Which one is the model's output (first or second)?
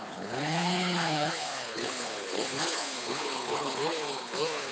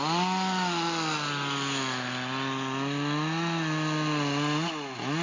first